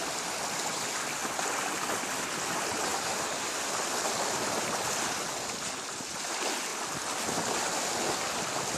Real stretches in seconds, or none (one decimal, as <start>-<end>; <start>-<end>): 0.0-8.8